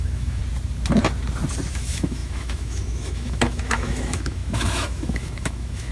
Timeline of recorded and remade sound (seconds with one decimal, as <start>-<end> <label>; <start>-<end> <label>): 0.0-0.4 remade; 0.4-1.7 recorded; 1.7-5.9 remade